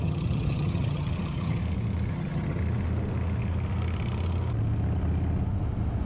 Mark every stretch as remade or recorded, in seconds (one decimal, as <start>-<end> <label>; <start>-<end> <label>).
0.0-1.6 remade; 1.6-2.1 recorded; 2.1-2.6 remade; 2.6-6.1 recorded